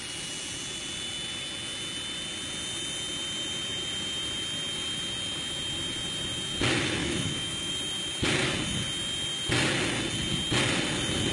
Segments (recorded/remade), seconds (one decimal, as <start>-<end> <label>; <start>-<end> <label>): 0.0-7.0 recorded; 7.0-7.7 remade; 7.7-11.3 recorded